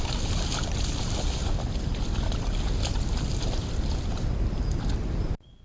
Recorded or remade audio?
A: recorded